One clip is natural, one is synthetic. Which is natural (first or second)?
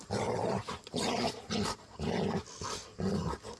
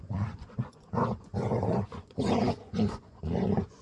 first